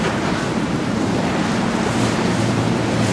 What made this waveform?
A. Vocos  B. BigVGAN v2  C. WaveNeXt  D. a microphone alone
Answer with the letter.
B